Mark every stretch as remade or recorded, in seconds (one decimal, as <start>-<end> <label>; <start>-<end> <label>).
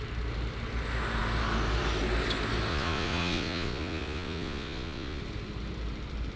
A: 0.0-2.7 recorded; 2.7-5.2 remade; 5.2-6.4 recorded